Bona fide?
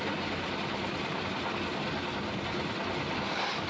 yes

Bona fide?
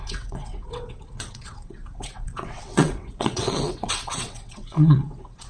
no